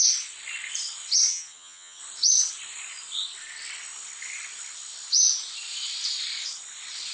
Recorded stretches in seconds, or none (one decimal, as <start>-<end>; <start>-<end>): 0.0-1.3; 2.0-7.1